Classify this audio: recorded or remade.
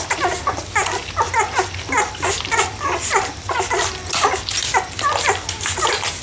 recorded